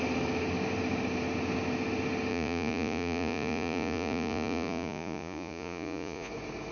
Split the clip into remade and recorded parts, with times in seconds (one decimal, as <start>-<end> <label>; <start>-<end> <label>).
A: 0.0-2.3 recorded; 2.3-6.3 remade; 6.3-6.7 recorded